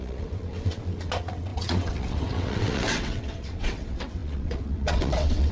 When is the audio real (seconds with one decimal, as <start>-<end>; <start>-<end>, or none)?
none